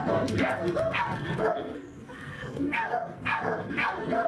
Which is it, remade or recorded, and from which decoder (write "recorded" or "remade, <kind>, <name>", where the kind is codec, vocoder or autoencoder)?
remade, codec, SNAC